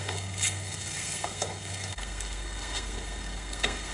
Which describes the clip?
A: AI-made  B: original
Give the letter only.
A